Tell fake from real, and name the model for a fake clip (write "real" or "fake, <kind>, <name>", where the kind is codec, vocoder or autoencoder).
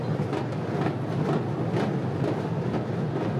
real